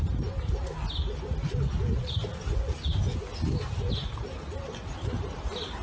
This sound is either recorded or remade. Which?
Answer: recorded